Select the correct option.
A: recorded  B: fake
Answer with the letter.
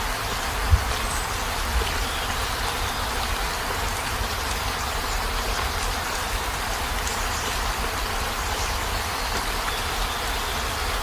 B